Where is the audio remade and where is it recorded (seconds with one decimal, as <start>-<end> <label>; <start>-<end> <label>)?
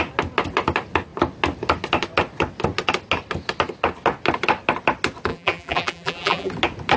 0.0-5.3 recorded; 5.3-6.5 remade; 6.5-7.0 recorded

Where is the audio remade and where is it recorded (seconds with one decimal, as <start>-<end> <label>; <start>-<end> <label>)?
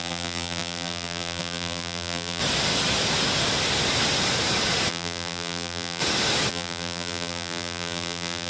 0.0-2.4 remade; 2.4-4.9 recorded; 4.9-6.0 remade; 6.0-6.5 recorded; 6.5-8.5 remade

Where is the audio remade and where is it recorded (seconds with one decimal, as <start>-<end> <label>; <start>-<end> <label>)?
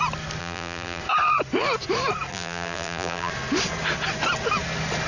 0.0-0.4 recorded; 0.4-1.0 remade; 1.0-2.3 recorded; 2.3-3.3 remade; 3.3-5.1 recorded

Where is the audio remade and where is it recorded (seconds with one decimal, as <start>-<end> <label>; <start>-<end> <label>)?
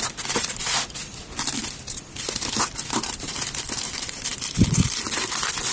0.0-0.6 remade; 0.6-1.9 recorded; 1.9-5.7 remade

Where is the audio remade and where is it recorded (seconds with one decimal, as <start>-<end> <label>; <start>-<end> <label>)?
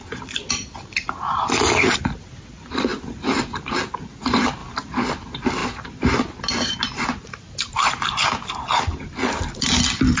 0.0-2.9 recorded; 2.9-3.9 remade; 3.9-4.6 recorded; 4.6-5.1 remade; 5.1-10.2 recorded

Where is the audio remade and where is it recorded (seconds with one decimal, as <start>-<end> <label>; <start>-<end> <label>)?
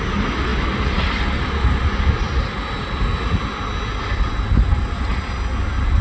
0.0-6.0 recorded